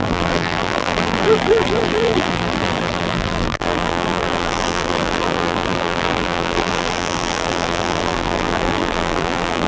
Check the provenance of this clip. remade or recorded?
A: remade